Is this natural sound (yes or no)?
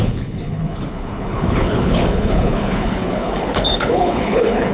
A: no